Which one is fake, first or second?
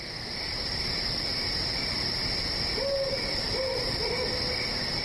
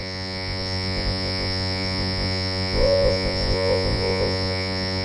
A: second